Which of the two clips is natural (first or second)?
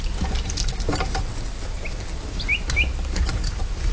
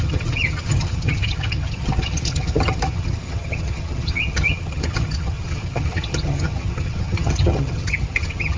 first